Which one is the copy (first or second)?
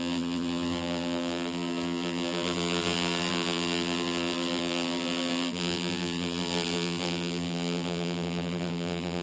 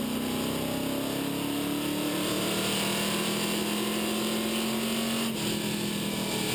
first